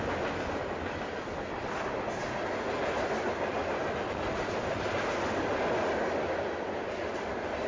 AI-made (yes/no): no